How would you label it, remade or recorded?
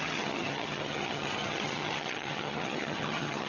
remade